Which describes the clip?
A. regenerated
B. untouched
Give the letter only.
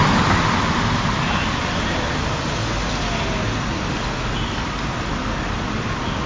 B